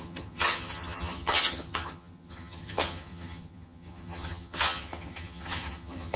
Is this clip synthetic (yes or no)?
yes